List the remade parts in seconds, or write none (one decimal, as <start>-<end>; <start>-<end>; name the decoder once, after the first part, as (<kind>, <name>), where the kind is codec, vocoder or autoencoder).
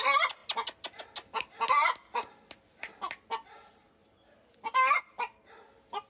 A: none